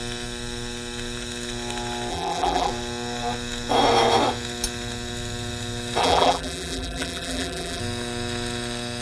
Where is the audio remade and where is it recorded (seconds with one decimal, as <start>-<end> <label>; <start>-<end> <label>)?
0.0-2.1 recorded; 2.1-2.7 remade; 2.7-6.0 recorded; 6.0-7.8 remade; 7.8-9.0 recorded